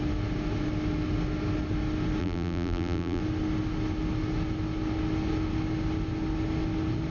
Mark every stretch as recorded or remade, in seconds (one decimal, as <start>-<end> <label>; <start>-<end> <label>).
0.0-2.2 recorded; 2.2-3.2 remade; 3.2-7.1 recorded

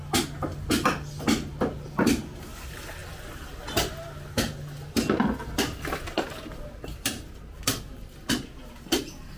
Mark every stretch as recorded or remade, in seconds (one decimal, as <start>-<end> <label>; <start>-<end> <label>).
0.0-9.4 recorded

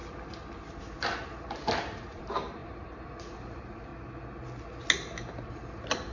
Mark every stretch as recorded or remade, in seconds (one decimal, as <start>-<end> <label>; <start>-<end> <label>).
0.0-0.8 recorded; 0.8-3.9 remade; 3.9-5.5 recorded; 5.5-6.1 remade

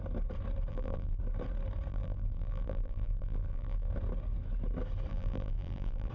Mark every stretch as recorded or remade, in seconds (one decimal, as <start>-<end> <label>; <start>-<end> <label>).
0.0-0.7 recorded; 0.7-1.2 remade; 1.2-1.9 recorded; 1.9-3.9 remade; 3.9-5.1 recorded; 5.1-6.1 remade